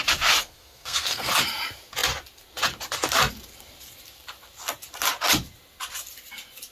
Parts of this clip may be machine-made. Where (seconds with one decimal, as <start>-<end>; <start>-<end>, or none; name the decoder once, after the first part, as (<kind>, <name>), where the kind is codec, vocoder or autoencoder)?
0.4-1.3 (codec, SNAC)